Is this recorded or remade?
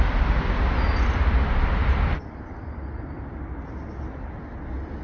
recorded